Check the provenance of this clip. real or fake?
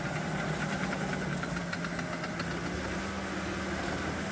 real